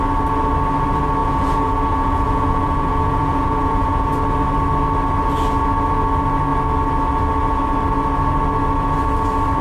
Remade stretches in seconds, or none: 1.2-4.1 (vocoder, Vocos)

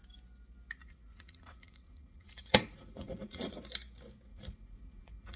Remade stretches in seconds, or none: 0.8-3.6 (vocoder, Vocos); 4.3-5.4

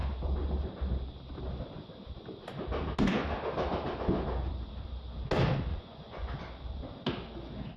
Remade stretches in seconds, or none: 5.7-6.3 (vocoder, Vocos)

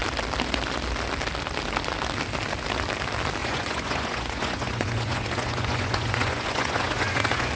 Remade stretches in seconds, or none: 3.4-7.5 (vocoder, Vocos)

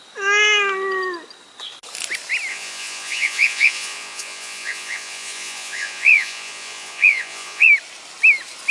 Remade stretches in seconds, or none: 2.5-7.7 (vocoder, Vocos)